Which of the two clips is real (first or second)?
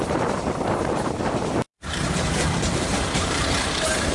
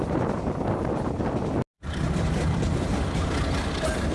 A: second